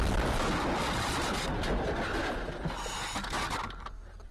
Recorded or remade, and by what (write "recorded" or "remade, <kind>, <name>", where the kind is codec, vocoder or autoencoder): recorded